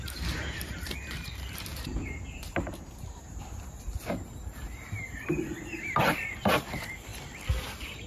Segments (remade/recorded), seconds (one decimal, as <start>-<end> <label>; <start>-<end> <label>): 0.0-7.1 remade; 7.1-7.6 recorded; 7.6-8.1 remade